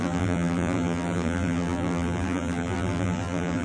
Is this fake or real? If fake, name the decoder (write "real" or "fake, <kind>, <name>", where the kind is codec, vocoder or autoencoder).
fake, vocoder, BigVGAN v2